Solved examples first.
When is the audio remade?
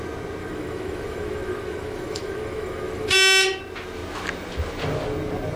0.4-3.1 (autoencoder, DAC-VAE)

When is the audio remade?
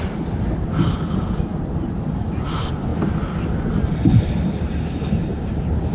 none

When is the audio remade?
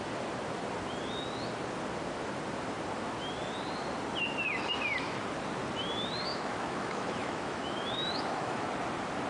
6.3-8.7 (autoencoder, DAC-VAE)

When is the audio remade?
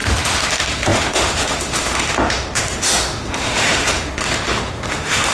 0.0-5.3 (autoencoder, DAC-VAE)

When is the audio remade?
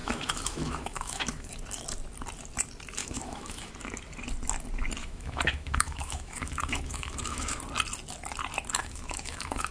0.0-1.5 (autoencoder, DAC-VAE); 3.0-3.7; 5.0-7.6; 8.8-9.7